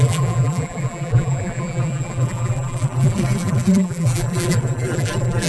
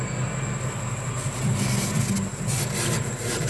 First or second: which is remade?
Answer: first